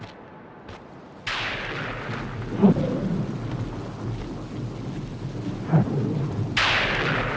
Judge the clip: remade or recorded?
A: recorded